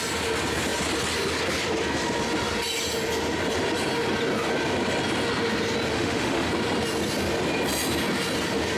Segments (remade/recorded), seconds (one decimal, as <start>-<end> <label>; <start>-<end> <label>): 0.0-5.9 recorded; 5.9-6.5 remade; 6.5-8.8 recorded